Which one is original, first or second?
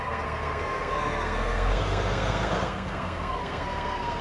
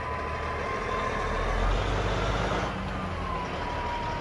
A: second